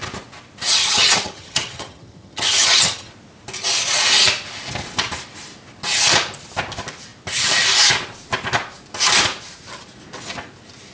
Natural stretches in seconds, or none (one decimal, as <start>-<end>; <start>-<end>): 0.0-0.8; 3.1-10.9